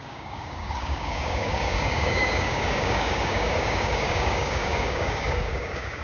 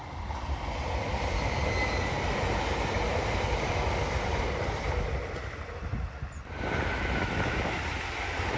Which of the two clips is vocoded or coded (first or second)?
first